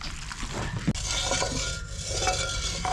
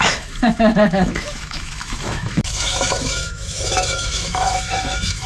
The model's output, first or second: second